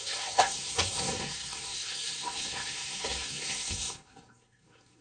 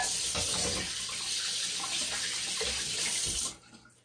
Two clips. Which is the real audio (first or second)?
second